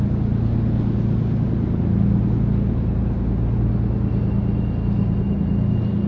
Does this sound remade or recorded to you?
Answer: recorded